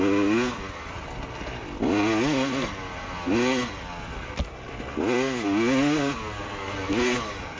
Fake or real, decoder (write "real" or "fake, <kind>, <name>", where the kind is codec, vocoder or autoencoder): real